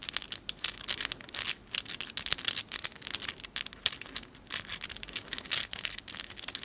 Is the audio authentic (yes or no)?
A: yes